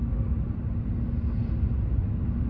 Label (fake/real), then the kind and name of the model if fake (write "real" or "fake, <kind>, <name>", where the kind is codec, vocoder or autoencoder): real